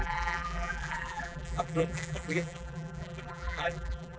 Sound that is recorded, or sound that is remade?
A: remade